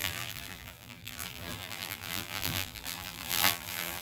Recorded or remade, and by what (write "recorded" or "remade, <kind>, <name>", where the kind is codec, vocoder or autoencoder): remade, vocoder, BigVGAN v2